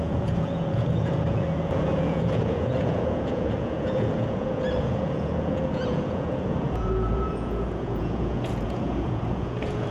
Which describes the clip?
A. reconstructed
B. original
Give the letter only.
A